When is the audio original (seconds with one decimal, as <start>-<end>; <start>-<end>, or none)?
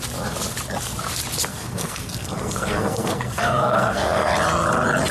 0.0-1.5; 4.3-5.1